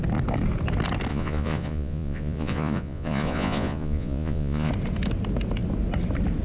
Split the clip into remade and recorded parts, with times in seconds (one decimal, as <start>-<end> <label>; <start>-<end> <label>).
0.0-1.1 recorded; 1.1-4.7 remade; 4.7-6.4 recorded